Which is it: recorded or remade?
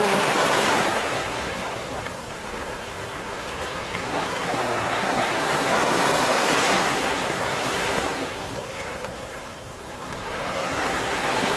remade